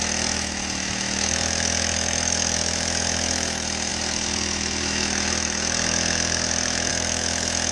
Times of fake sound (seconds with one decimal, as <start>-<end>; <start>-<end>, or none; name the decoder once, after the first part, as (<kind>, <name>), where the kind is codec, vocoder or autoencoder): 0.0-7.7 (autoencoder, DAC-VAE)